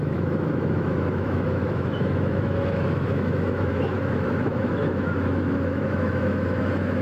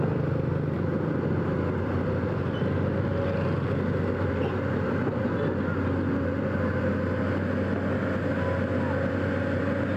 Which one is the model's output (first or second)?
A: first